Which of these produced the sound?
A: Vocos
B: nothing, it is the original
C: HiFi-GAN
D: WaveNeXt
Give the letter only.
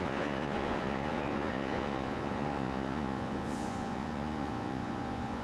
A